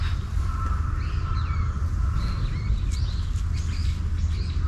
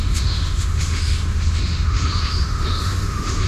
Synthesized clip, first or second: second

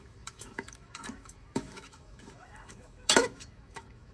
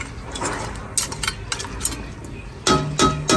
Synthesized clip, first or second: first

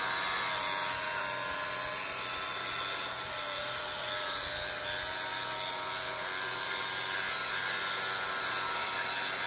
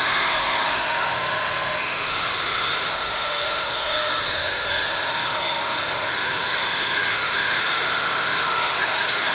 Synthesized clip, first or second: second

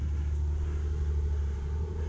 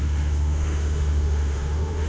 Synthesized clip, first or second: second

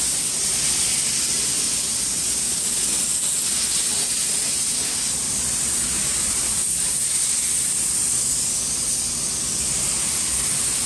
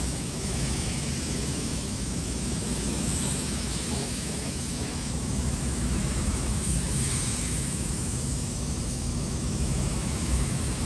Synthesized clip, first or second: second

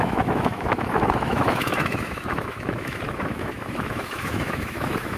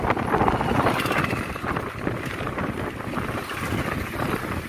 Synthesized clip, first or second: first